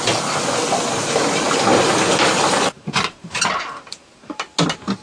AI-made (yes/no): no